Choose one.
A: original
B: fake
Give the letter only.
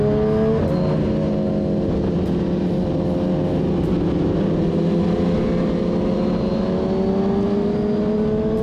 A